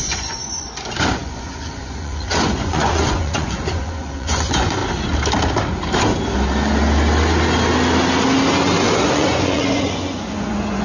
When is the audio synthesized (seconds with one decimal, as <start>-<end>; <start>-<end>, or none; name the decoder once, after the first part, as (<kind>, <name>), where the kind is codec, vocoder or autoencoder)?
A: 0.0-4.8 (vocoder, Vocos); 9.1-10.8